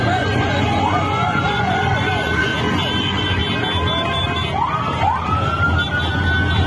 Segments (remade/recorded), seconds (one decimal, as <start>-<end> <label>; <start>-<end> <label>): 0.0-2.5 remade; 2.5-3.0 recorded; 3.0-3.4 remade; 3.4-6.7 recorded